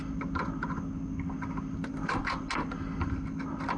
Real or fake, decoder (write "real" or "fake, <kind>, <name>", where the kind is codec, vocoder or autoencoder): real